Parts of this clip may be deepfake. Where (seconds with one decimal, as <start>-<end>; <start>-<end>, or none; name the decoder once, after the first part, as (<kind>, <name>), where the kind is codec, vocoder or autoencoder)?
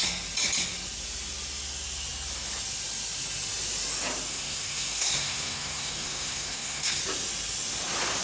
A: 4.3-7.0 (codec, SNAC)